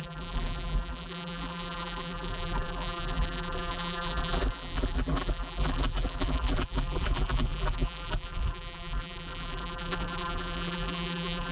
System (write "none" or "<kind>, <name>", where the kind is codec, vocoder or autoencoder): vocoder, BigVGAN v2